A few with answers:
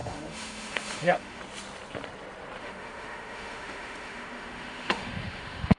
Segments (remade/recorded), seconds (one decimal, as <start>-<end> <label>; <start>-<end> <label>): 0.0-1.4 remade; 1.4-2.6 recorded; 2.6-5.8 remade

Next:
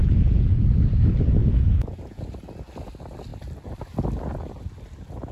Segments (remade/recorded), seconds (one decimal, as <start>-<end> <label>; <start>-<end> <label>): 0.0-0.7 remade; 0.7-1.4 recorded; 1.4-2.2 remade; 2.2-5.3 recorded

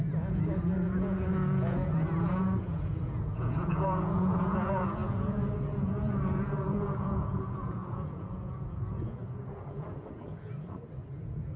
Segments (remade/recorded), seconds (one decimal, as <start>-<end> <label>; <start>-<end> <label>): 0.0-11.6 remade